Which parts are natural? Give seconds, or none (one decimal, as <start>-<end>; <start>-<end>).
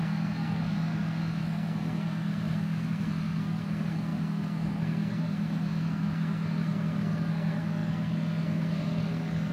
none